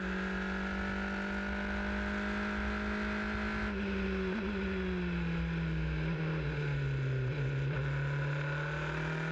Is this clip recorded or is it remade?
recorded